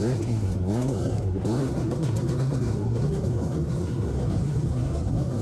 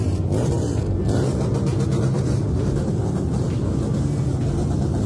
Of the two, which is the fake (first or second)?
first